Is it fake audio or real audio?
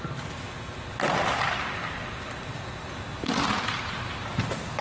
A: real